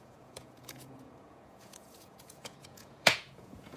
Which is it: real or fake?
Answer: fake